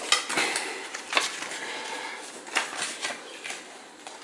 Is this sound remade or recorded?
recorded